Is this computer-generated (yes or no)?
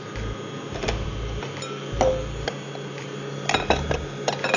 no